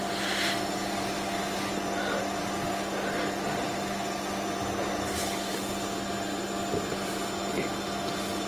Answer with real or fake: real